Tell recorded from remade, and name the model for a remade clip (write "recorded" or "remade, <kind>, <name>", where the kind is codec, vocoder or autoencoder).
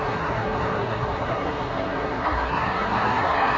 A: remade, codec, SNAC